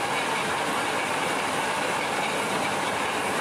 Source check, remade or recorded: remade